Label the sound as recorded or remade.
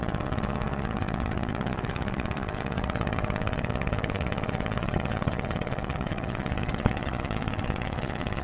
remade